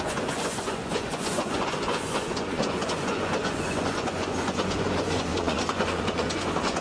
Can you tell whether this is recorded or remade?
remade